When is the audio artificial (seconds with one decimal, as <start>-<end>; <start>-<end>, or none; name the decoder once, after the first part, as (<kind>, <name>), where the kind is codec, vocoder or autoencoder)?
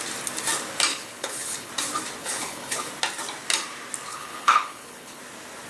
0.9-1.7 (codec, HILCodec); 2.2-2.9; 4.1-5.2